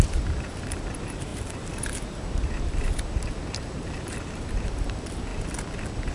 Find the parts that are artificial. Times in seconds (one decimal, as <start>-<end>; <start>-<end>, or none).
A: 0.0-5.3